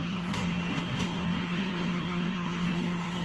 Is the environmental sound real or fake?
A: fake